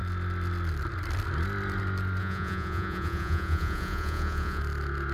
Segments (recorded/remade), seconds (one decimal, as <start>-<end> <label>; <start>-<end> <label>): 0.0-2.2 recorded; 2.2-4.6 remade; 4.6-5.1 recorded